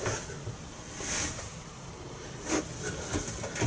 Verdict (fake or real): real